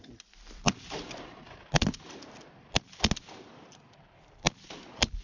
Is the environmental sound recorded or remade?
recorded